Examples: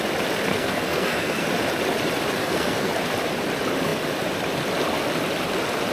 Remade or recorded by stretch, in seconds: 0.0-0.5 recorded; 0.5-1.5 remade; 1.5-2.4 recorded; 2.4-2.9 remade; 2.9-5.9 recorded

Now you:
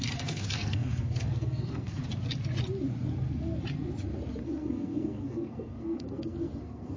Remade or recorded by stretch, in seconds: 0.0-2.0 remade; 2.0-4.4 recorded; 4.4-7.0 remade

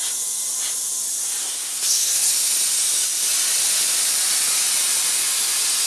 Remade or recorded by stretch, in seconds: 0.0-1.4 recorded; 1.4-2.3 remade; 2.3-5.9 recorded

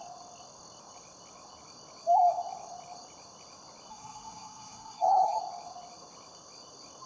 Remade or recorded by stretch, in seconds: 0.0-3.9 recorded; 3.9-5.4 remade; 5.4-7.1 recorded

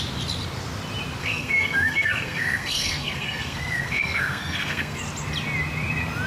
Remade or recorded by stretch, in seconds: 0.0-1.2 recorded; 1.2-5.0 remade; 5.0-6.3 recorded

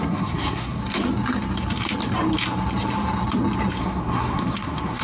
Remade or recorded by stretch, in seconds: 0.0-0.8 remade; 0.8-3.8 recorded; 3.8-5.0 remade

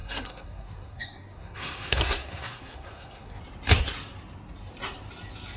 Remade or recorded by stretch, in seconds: 0.0-3.4 remade; 3.4-5.6 recorded

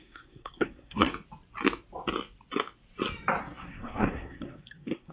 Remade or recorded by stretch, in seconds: 0.0-1.1 remade; 1.1-3.4 recorded; 3.4-5.1 remade